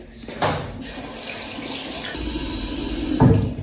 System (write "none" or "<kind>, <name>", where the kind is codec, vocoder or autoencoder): none